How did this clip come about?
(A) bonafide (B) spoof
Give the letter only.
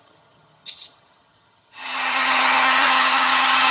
B